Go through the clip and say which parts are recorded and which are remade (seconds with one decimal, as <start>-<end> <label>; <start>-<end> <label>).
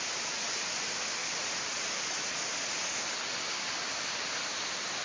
0.0-1.2 recorded; 1.2-2.3 remade; 2.3-5.0 recorded